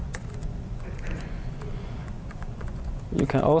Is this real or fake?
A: fake